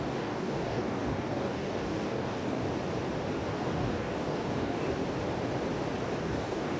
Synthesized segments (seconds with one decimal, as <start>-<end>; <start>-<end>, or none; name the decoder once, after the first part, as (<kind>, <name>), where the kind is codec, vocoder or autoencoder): 0.0-2.6 (codec, DAC); 3.5-5.0; 6.2-6.8